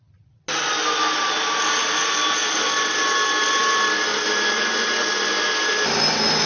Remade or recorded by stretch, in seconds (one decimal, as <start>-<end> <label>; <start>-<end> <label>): 0.0-6.5 recorded